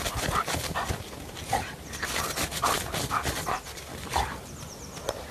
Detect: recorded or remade recorded